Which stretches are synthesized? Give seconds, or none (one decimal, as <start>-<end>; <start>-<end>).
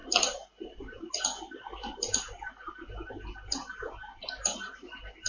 none